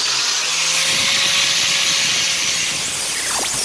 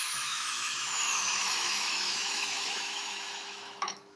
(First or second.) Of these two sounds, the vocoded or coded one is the second